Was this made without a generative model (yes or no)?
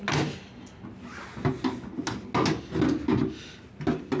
yes